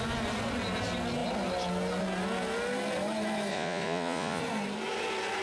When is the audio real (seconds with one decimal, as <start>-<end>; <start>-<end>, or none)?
0.0-3.5; 4.4-5.4